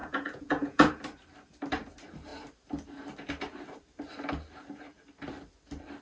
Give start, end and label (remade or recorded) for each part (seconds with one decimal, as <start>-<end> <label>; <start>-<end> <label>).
0.0-1.0 remade; 1.0-6.0 recorded